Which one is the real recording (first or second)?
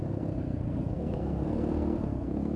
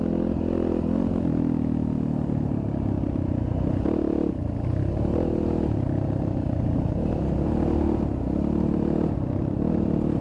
second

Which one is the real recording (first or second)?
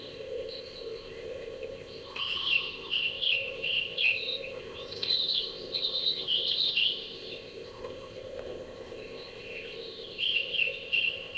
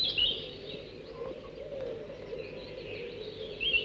second